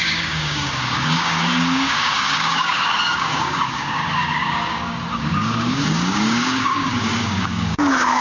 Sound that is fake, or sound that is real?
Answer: fake